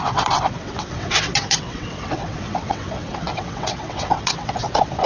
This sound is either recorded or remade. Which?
remade